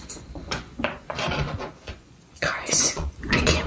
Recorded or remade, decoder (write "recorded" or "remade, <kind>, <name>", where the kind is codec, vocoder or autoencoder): remade, vocoder, Vocos